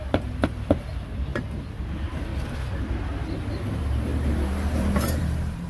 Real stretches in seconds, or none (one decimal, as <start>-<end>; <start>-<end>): 2.3-2.8